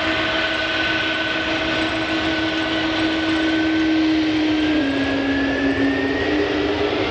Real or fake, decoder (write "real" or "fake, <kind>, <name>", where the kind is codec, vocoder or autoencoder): real